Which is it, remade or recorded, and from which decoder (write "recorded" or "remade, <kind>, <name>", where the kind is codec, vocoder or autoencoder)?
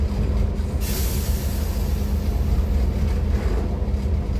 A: recorded